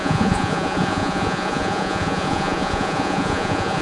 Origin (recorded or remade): remade